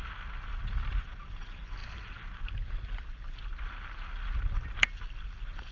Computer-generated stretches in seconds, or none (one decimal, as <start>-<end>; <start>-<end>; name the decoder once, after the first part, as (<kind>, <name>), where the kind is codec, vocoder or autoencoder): none